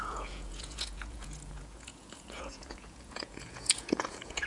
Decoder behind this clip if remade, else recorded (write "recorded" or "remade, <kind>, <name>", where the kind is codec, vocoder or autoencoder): remade, vocoder, Vocos